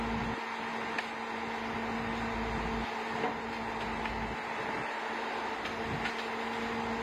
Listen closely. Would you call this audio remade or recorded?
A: recorded